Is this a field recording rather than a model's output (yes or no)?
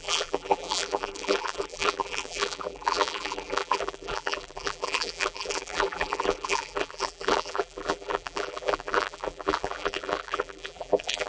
no